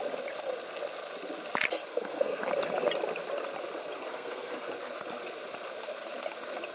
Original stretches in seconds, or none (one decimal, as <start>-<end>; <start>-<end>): 0.0-1.9; 2.5-4.0; 4.7-6.7